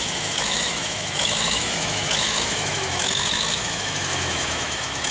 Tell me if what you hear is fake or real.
fake